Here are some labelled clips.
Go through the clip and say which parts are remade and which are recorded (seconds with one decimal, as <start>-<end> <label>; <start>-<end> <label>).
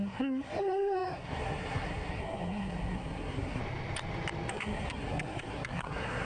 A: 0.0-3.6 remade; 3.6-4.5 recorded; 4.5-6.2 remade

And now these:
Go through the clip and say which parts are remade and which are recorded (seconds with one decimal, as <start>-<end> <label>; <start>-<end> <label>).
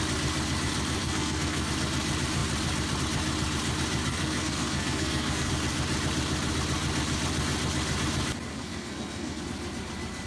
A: 0.0-1.0 recorded; 1.0-1.7 remade; 1.7-4.1 recorded; 4.1-5.5 remade; 5.5-8.5 recorded; 8.5-9.4 remade; 9.4-10.3 recorded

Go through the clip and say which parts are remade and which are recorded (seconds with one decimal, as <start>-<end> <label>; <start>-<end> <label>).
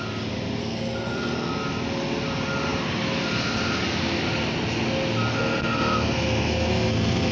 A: 0.0-0.6 recorded; 0.6-1.5 remade; 1.5-5.3 recorded; 5.3-7.3 remade